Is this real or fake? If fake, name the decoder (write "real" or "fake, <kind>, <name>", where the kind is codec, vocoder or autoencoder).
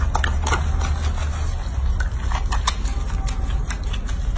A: real